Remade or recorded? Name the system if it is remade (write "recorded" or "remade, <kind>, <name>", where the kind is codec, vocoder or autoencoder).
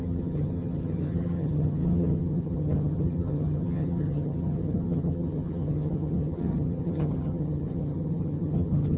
remade, vocoder, HiFi-GAN